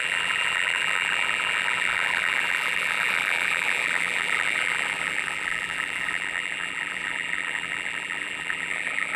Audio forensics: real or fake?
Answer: fake